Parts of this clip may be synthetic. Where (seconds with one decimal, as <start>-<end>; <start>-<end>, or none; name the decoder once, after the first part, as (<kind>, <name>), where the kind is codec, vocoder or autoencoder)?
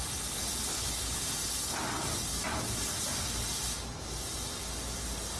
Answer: 0.7-1.3 (codec, HILCodec)